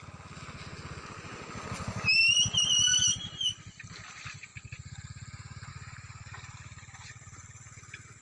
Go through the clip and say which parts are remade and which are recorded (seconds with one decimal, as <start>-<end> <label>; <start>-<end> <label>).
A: 0.0-8.2 recorded